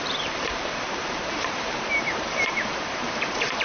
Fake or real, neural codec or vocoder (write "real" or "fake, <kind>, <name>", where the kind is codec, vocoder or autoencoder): fake, vocoder, BigVGAN v2